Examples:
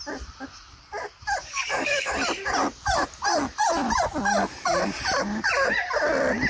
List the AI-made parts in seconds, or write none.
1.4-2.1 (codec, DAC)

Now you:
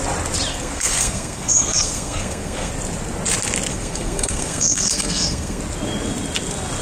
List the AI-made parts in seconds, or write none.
0.5-2.7 (codec, SNAC); 3.7-5.6